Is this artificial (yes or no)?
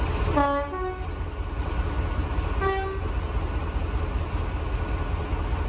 no